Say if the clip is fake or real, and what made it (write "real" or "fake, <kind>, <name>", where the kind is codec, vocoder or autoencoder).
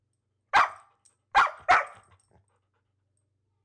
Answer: real